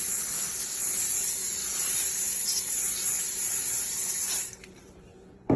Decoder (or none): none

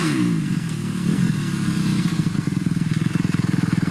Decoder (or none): codec, SNAC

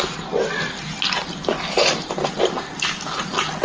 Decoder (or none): none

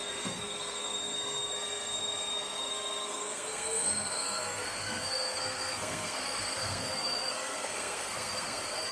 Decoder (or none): codec, SNAC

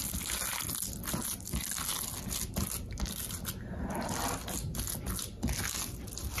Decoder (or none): none